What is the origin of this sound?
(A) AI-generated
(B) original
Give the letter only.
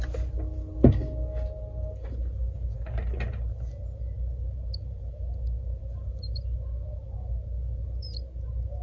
B